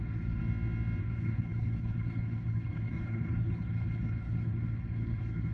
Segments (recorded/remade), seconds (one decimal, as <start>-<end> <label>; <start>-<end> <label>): 0.0-0.4 remade; 0.4-1.0 recorded; 1.0-5.5 remade